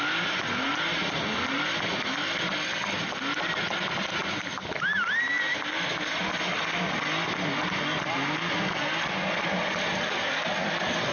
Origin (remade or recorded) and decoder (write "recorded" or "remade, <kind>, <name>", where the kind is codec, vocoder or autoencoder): recorded